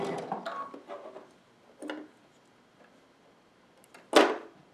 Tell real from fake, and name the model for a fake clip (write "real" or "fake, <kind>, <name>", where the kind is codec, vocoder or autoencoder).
real